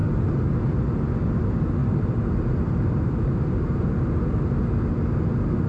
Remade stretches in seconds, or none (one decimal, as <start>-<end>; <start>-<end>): 1.8-3.8